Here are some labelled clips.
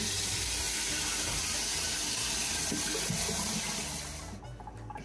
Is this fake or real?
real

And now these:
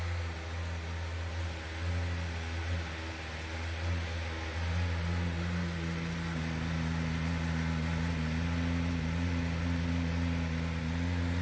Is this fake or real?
real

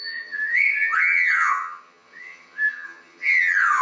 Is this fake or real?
fake